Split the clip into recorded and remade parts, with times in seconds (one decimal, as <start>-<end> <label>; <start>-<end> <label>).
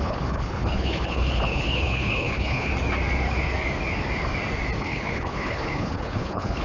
0.0-2.7 remade; 2.7-4.8 recorded; 4.8-6.6 remade